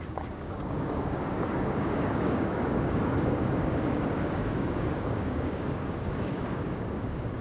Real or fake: fake